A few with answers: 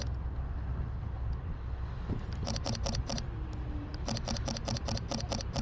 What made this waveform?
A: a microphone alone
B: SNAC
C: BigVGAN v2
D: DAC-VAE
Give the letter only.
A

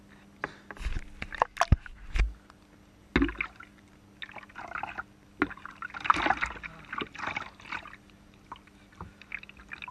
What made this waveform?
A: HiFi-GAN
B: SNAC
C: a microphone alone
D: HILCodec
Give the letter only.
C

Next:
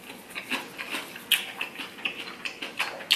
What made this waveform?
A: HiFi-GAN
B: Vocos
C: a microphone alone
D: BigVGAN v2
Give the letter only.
C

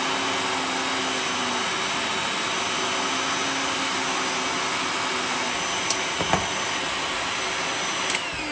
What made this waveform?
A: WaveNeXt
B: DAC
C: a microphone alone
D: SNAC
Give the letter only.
C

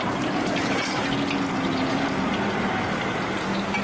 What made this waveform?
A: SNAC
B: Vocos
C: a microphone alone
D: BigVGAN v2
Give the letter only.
C